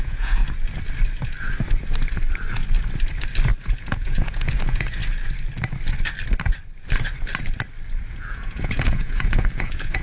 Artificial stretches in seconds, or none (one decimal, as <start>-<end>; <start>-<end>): 0.0-0.4; 3.6-5.0; 8.1-10.0